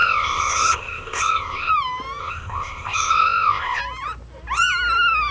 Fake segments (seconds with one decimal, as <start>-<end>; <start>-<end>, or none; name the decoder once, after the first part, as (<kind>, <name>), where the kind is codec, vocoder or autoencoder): 0.0-1.7 (codec, ZipCodec); 2.2-3.8